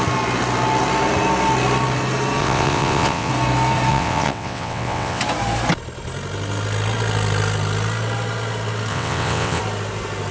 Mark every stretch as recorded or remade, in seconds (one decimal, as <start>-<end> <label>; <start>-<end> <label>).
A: 0.0-2.4 recorded; 2.4-3.3 remade; 3.3-3.9 recorded; 3.9-5.2 remade; 5.2-8.9 recorded; 8.9-9.6 remade; 9.6-10.3 recorded